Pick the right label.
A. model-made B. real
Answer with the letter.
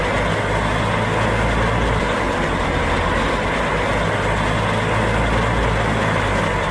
B